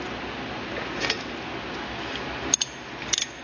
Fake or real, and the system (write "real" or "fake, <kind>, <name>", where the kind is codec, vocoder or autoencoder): real